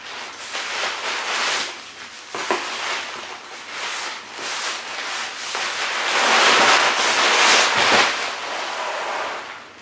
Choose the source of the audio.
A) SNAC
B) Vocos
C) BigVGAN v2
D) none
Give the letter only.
D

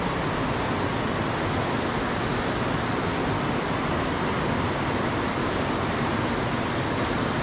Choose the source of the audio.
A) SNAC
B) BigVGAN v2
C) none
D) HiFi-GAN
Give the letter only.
C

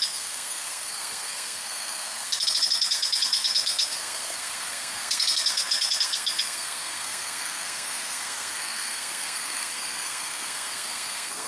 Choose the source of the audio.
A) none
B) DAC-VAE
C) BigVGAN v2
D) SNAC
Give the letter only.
D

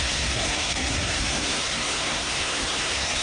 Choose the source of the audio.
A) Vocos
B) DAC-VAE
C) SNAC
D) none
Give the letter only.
C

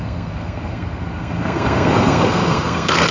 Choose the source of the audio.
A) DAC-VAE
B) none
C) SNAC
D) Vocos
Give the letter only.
C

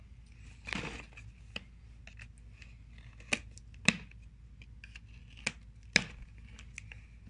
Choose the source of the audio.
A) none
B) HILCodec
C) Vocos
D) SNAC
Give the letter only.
A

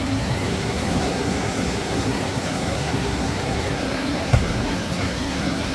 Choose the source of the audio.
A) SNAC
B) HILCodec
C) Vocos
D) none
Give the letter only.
A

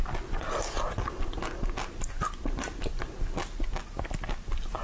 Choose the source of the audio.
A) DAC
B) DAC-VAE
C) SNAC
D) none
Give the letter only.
D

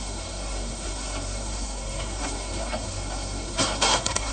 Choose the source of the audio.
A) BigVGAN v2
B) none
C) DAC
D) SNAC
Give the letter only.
D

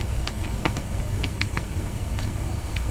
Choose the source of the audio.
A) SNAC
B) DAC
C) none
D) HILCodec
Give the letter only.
A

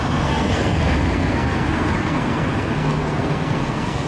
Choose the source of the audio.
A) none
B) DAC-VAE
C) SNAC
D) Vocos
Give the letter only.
C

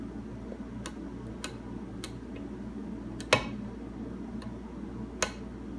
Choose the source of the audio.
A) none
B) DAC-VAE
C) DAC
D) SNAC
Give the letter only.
A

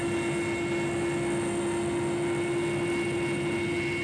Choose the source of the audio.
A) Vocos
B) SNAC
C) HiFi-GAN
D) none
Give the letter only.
D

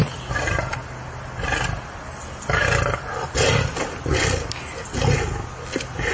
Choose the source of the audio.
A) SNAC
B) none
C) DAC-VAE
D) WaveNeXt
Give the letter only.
B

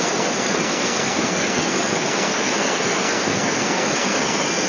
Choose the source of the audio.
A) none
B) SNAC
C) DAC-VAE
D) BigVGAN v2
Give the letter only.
B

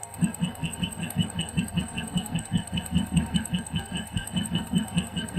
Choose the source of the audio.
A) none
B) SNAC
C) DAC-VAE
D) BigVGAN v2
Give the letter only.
B